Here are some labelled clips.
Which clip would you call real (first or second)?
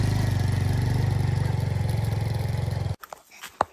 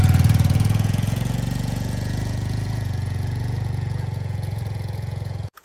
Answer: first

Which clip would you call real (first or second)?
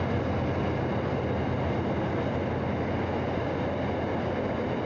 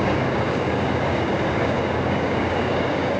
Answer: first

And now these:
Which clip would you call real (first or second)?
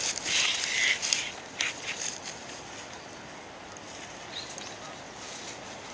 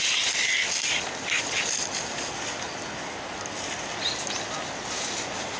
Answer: second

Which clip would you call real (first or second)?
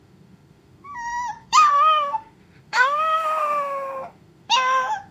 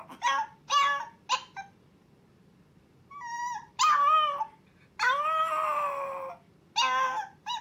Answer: second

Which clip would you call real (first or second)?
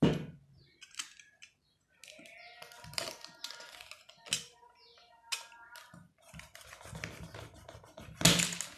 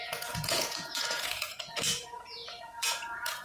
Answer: first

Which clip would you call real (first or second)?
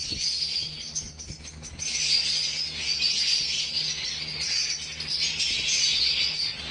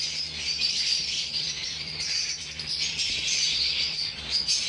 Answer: first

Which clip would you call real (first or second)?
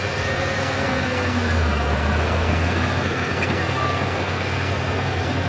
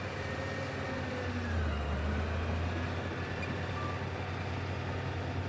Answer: second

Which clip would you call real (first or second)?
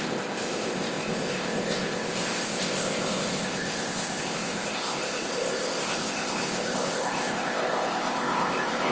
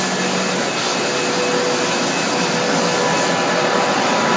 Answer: second